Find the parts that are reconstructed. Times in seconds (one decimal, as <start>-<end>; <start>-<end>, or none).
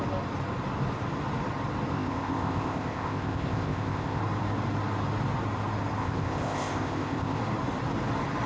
1.9-4.2; 6.0-7.4